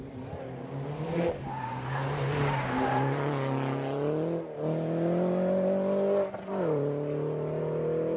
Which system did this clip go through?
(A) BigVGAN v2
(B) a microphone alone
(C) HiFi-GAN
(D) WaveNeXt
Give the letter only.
B